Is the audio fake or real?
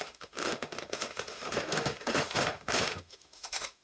fake